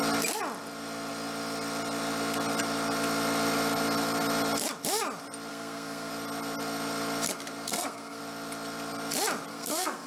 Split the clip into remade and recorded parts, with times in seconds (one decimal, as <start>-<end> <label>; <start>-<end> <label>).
0.0-5.5 recorded; 5.5-6.1 remade; 6.1-7.7 recorded; 7.7-8.2 remade; 8.2-9.5 recorded; 9.5-10.1 remade